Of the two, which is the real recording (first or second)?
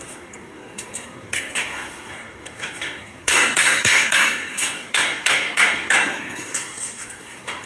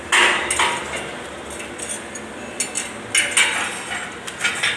second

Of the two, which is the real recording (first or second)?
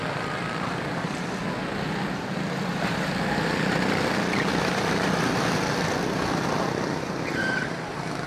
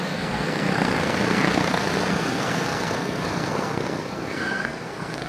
first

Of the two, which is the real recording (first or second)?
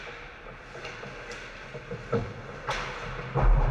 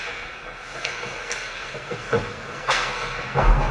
first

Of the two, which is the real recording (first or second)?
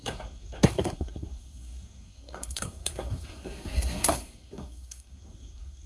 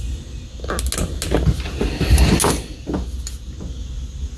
second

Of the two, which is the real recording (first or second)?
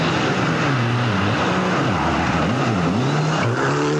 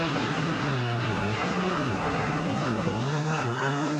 first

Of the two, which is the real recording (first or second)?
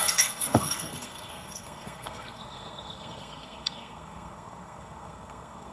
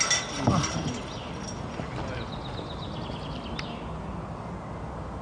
second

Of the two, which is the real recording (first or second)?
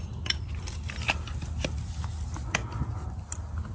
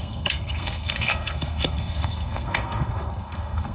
first